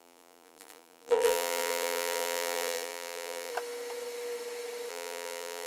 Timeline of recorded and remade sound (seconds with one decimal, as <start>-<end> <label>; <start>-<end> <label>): 0.0-3.5 remade; 3.5-4.9 recorded; 4.9-5.7 remade